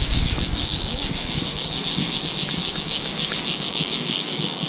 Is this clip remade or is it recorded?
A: remade